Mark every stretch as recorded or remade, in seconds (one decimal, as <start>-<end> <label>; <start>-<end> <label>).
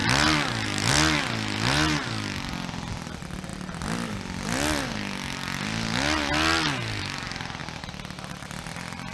0.0-9.1 recorded